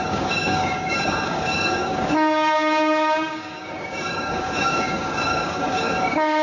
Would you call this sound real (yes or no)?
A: no